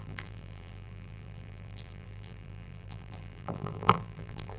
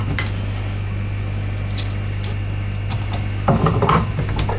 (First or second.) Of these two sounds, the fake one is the first